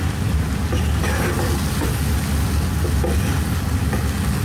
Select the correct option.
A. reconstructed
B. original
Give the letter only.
B